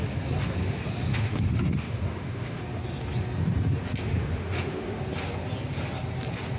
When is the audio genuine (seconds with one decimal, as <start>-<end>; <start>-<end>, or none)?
0.0-1.1; 2.6-4.1; 5.0-6.6